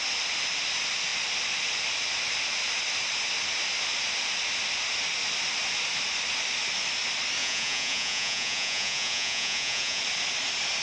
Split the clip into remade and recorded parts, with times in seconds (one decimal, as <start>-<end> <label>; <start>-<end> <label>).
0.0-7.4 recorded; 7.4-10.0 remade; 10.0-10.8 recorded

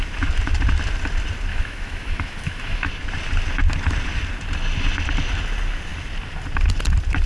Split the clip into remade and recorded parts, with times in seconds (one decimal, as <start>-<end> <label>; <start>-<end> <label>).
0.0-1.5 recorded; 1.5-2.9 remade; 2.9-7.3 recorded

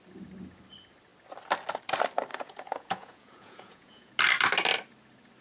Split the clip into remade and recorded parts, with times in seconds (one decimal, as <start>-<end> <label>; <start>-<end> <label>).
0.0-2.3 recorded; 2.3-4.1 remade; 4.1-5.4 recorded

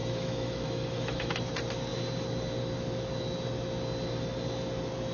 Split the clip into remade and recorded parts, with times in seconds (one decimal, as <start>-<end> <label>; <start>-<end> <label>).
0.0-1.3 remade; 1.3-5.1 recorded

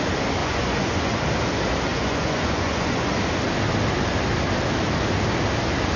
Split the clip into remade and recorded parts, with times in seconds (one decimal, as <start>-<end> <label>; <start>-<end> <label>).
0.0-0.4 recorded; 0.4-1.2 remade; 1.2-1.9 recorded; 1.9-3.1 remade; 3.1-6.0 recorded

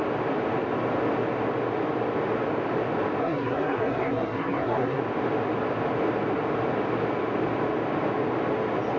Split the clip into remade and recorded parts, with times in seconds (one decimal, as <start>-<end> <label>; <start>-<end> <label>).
0.0-3.2 recorded; 3.2-5.0 remade; 5.0-9.0 recorded

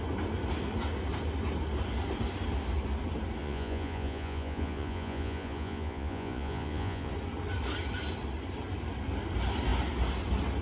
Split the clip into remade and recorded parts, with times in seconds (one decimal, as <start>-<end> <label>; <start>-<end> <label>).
0.0-3.4 recorded; 3.4-7.1 remade; 7.1-10.6 recorded

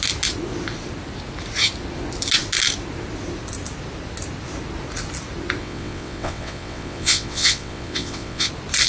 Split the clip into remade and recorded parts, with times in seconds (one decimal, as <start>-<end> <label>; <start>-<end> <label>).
0.0-5.6 recorded; 5.6-8.5 remade; 8.5-8.9 recorded